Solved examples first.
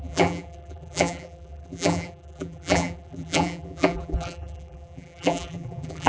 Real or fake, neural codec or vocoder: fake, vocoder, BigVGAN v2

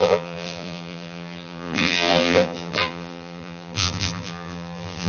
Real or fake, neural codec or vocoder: fake, vocoder, BigVGAN v2